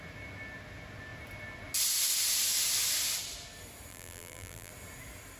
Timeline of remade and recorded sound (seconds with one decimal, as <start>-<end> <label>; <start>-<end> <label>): 0.0-3.9 recorded; 3.9-4.7 remade; 4.7-5.4 recorded